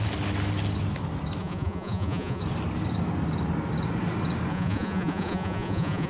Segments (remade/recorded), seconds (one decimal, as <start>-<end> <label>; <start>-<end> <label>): 0.0-1.4 recorded; 1.4-2.4 remade; 2.4-4.5 recorded; 4.5-6.1 remade